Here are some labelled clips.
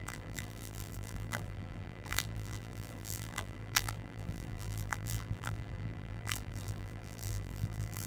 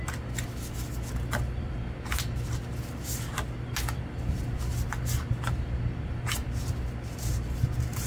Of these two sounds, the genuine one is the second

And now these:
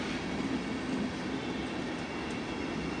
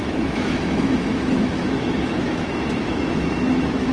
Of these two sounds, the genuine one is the first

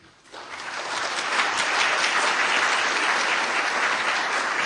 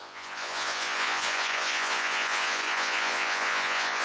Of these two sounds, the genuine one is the first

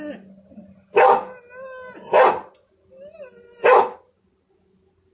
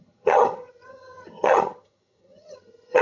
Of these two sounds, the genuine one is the first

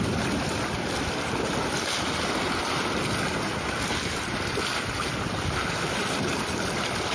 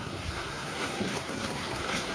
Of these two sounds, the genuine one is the first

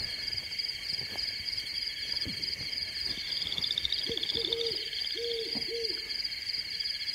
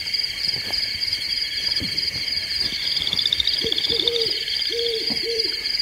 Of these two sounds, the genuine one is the first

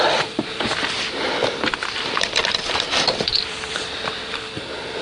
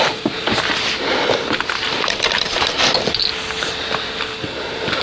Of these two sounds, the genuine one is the second